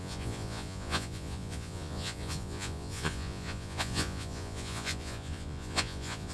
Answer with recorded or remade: remade